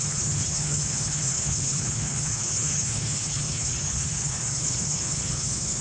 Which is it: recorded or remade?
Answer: remade